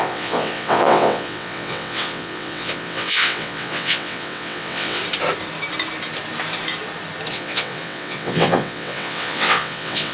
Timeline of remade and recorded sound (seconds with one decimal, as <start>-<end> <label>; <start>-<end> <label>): 0.0-5.0 remade; 5.0-7.3 recorded; 7.3-10.1 remade

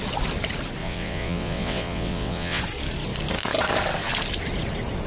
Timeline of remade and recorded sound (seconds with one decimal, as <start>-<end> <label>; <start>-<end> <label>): 0.0-0.8 recorded; 0.8-2.6 remade; 2.6-5.1 recorded

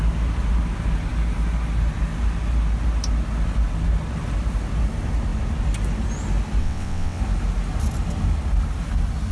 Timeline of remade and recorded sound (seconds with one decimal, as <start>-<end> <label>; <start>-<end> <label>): 0.0-6.6 recorded; 6.6-7.2 remade; 7.2-9.3 recorded